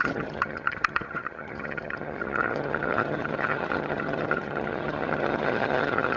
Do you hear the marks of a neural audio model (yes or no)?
yes